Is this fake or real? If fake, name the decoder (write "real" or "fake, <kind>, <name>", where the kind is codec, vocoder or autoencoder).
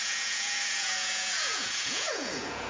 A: fake, vocoder, Vocos